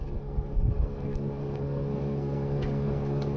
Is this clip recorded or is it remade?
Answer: remade